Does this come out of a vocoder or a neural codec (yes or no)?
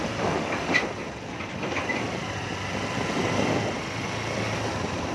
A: no